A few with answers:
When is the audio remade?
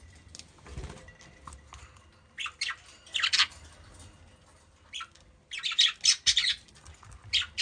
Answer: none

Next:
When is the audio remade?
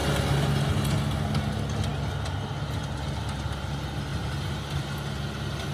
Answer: none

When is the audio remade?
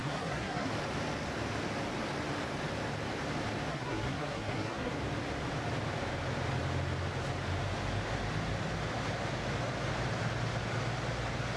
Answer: 0.0-0.7 (codec, SNAC); 3.7-4.9